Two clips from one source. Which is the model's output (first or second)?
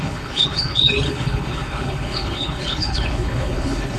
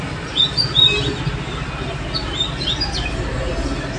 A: first